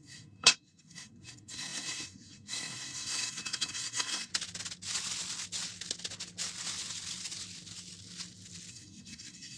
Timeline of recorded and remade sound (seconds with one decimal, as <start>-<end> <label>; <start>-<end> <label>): 0.0-4.3 remade; 4.3-8.7 recorded; 8.7-9.6 remade